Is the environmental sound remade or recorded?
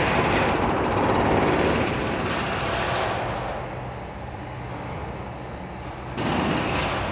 recorded